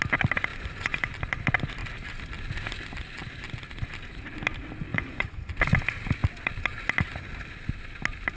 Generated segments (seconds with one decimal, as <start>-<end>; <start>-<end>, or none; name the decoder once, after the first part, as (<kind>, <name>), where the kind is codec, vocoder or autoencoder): 0.5-1.1 (vocoder, Vocos); 4.9-5.5